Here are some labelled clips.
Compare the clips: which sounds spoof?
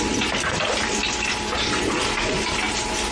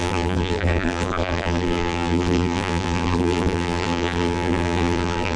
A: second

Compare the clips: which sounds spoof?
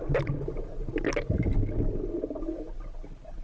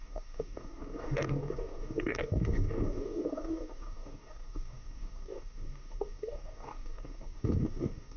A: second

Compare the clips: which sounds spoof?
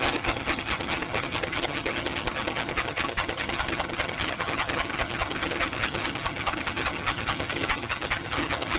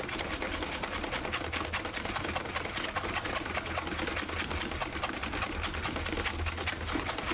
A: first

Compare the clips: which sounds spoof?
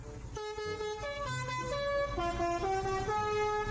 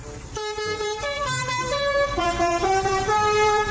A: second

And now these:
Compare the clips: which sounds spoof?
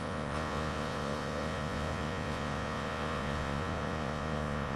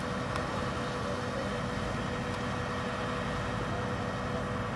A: first